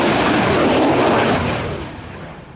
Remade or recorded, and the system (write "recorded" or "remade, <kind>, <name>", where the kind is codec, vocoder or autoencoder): recorded